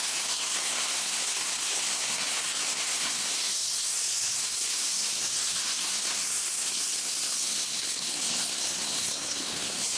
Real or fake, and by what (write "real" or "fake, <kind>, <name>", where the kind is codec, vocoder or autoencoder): fake, codec, SNAC